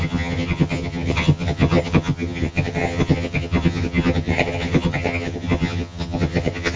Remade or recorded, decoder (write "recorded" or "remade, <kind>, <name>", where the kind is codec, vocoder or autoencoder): remade, vocoder, HiFi-GAN